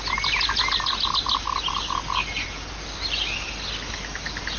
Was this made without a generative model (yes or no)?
yes